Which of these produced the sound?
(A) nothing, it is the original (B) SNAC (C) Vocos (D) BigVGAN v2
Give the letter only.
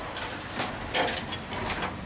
D